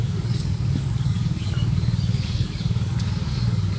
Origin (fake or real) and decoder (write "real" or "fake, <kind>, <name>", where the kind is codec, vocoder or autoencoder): fake, codec, DAC